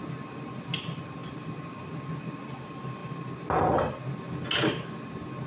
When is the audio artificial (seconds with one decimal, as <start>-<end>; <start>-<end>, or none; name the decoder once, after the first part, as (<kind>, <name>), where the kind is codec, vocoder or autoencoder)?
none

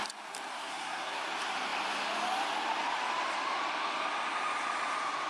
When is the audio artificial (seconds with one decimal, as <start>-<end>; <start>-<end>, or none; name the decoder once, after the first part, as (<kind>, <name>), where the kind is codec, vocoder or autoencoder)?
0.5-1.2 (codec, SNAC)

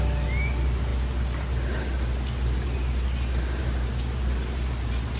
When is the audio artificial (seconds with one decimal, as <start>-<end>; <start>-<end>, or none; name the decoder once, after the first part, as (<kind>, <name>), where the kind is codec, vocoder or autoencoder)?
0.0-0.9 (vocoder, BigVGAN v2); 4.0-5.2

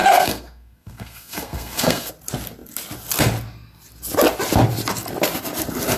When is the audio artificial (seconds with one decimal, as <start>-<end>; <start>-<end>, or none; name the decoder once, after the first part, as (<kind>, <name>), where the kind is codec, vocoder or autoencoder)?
0.0-2.1 (codec, SNAC)

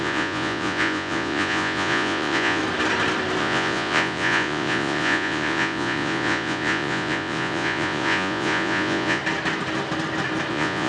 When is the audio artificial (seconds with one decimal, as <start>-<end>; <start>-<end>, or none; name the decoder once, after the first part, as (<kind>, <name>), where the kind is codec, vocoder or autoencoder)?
0.0-2.6 (vocoder, Vocos); 3.4-9.2; 10.5-10.9

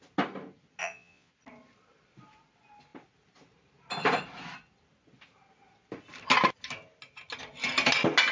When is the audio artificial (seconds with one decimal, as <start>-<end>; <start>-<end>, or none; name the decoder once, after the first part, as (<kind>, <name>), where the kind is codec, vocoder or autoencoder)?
0.8-1.3 (vocoder, Vocos)

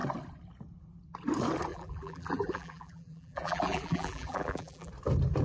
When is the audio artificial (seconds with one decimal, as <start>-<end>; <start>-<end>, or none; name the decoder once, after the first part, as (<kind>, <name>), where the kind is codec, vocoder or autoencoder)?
1.7-4.9 (vocoder, BigVGAN v2)

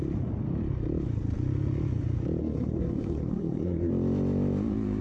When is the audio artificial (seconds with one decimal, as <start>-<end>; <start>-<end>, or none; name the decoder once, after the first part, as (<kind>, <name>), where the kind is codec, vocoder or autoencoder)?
2.4-3.9 (codec, SNAC)